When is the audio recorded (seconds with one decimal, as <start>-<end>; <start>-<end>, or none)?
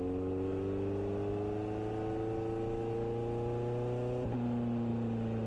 0.0-5.5